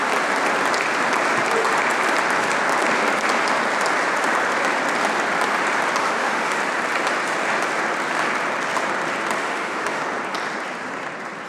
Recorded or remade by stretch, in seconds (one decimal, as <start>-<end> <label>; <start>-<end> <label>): 0.0-6.0 recorded; 6.0-6.6 remade; 6.6-9.4 recorded; 9.4-10.0 remade; 10.0-11.5 recorded